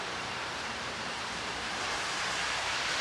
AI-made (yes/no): yes